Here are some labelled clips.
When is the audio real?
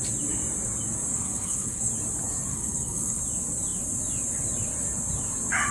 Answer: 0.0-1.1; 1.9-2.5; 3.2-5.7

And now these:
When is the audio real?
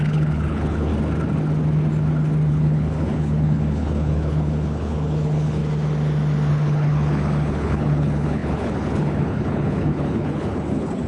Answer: 0.9-2.5; 5.6-6.5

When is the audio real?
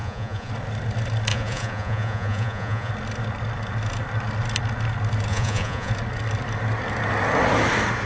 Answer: 0.5-1.3; 2.9-5.3; 5.9-8.1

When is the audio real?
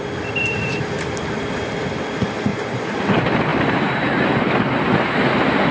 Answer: 0.0-0.7; 1.7-2.5; 3.1-3.5; 4.0-5.7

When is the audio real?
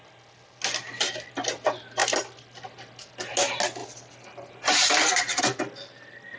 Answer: 0.0-3.8; 5.4-6.4